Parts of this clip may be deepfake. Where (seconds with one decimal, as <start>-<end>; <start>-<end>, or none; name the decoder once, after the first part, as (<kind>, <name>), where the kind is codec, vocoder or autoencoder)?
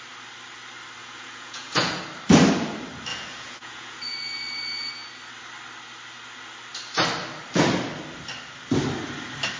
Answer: 1.0-2.0 (vocoder, Vocos); 3.1-4.9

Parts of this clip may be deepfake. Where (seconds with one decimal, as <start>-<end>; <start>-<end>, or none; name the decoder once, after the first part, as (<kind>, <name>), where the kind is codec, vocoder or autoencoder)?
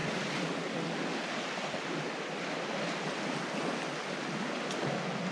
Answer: none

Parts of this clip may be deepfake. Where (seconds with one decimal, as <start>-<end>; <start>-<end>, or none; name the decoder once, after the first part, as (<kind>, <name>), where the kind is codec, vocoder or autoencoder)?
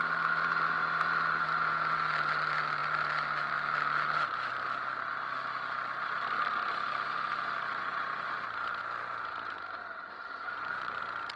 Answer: 7.8-8.3 (vocoder, Vocos); 9.8-11.0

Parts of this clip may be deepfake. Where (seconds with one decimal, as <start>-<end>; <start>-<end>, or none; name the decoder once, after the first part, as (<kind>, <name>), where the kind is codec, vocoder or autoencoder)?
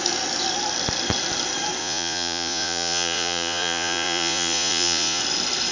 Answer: 1.8-5.2 (vocoder, Vocos)